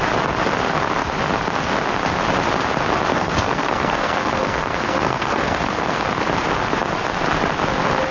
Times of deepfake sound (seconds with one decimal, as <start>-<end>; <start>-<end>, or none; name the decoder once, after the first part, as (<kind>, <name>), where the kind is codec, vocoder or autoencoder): 3.1-6.0 (codec, SNAC)